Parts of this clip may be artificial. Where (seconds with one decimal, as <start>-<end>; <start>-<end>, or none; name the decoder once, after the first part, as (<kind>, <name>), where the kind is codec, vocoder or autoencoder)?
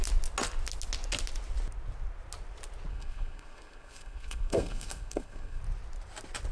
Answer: 2.9-5.6 (codec, SNAC)